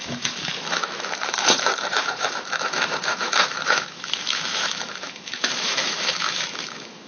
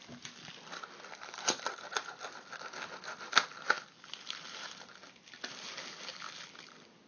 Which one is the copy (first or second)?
first